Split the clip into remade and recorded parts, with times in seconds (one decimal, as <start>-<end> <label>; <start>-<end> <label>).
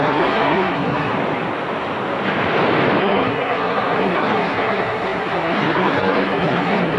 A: 0.0-1.1 remade; 1.1-3.0 recorded; 3.0-7.0 remade